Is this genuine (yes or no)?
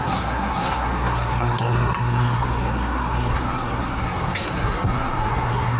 no